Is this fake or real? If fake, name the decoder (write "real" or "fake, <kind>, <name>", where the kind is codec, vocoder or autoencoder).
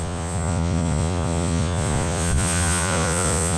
fake, vocoder, Vocos